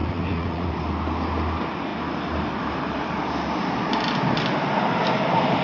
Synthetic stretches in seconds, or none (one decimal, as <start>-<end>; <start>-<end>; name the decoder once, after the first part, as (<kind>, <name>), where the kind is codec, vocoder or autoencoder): 0.0-0.7 (vocoder, Vocos)